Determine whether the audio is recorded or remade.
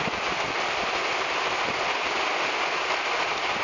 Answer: recorded